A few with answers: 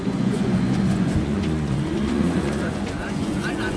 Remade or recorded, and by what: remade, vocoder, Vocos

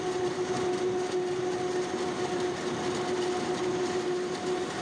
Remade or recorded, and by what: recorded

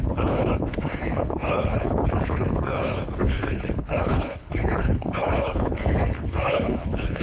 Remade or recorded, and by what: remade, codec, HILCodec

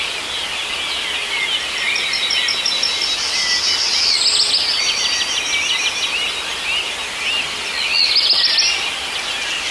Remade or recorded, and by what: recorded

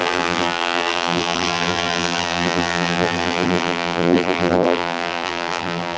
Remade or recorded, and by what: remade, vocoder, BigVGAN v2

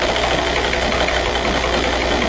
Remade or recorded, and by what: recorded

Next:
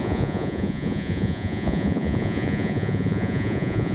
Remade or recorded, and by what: remade, vocoder, Vocos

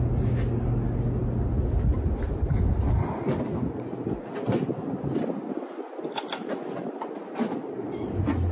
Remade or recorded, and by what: recorded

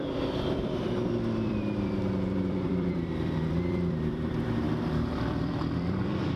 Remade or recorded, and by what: remade, vocoder, BigVGAN v2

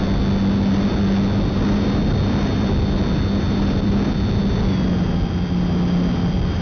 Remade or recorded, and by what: recorded